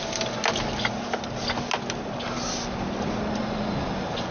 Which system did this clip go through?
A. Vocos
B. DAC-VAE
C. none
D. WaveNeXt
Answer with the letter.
C